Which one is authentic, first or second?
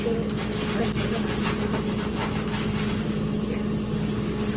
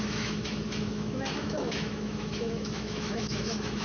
first